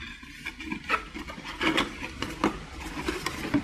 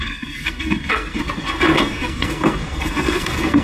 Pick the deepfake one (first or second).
second